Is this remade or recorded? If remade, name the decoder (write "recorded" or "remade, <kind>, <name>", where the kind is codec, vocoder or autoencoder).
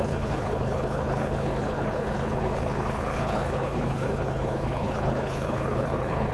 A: remade, codec, HILCodec